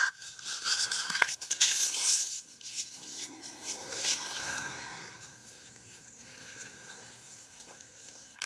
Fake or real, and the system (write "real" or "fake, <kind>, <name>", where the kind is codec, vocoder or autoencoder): fake, codec, SNAC